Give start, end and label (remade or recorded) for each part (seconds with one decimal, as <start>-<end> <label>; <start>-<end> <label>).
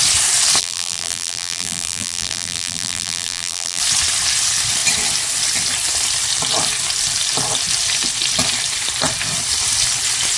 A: 0.0-0.6 recorded; 0.6-3.8 remade; 3.8-10.4 recorded